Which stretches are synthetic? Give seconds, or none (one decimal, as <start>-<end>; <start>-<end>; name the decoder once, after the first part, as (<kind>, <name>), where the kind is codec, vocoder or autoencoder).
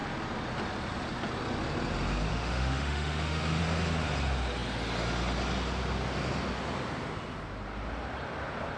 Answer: 2.3-3.6 (autoencoder, DAC-VAE)